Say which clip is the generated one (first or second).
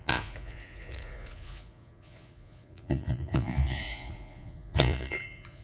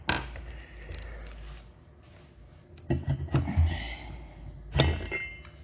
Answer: first